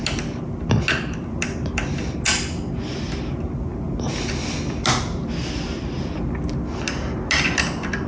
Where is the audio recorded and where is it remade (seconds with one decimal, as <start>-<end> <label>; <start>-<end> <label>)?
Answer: 0.0-8.1 recorded